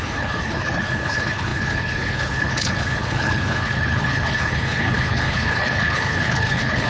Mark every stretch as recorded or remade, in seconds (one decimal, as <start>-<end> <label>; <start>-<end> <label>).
0.0-6.9 remade